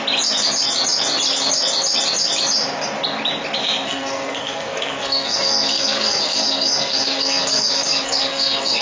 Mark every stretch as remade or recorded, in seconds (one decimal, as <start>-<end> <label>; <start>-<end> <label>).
0.0-3.6 recorded; 3.6-8.8 remade